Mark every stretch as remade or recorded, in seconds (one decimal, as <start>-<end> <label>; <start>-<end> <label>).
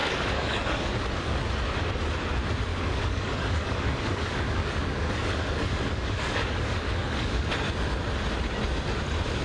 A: 0.0-1.4 remade; 1.4-2.7 recorded; 2.7-7.5 remade; 7.5-9.4 recorded